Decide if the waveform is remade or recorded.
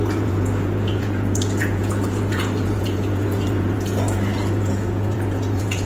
remade